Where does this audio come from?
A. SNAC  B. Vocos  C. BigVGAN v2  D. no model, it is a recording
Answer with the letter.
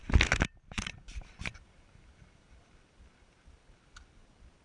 D